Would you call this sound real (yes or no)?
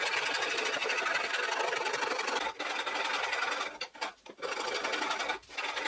yes